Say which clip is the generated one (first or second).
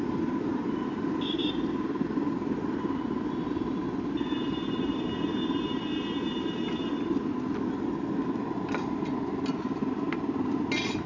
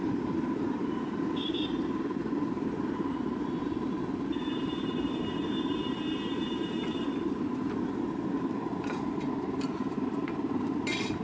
second